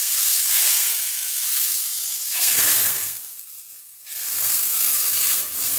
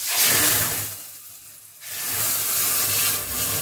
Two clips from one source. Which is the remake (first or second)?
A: first